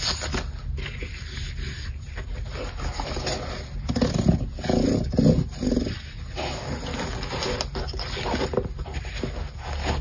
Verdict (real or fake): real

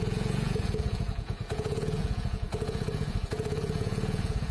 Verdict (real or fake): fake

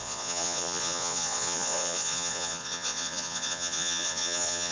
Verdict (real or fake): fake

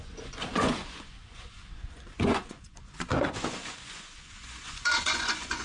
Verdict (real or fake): fake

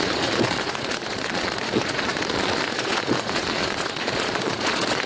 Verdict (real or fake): fake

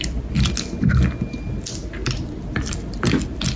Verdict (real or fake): real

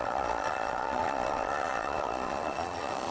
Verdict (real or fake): fake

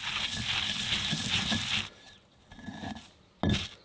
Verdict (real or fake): real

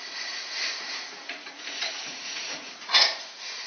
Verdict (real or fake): fake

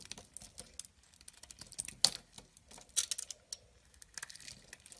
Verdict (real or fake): real